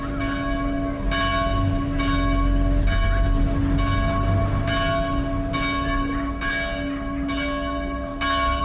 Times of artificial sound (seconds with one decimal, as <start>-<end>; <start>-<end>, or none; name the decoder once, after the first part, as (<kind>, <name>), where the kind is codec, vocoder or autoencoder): none